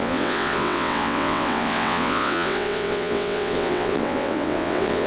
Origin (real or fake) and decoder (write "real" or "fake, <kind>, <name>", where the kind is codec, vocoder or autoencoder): fake, vocoder, WaveNeXt